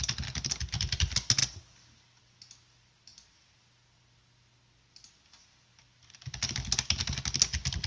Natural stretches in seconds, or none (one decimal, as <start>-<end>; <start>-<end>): 0.0-7.9